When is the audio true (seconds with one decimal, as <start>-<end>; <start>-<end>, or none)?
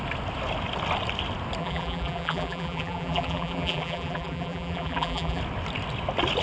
0.0-1.6; 5.4-6.4